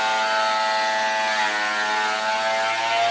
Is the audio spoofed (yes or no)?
no